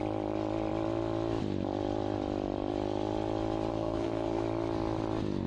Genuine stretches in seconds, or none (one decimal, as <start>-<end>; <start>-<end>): 0.0-3.7; 4.4-5.5